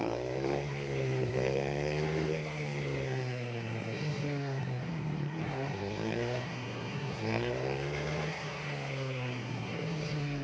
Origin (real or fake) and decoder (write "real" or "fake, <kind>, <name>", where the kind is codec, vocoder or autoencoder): fake, codec, SNAC